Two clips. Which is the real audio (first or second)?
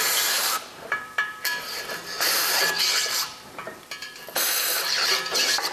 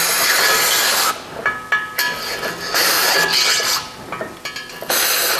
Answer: second